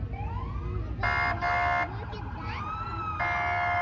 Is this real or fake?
real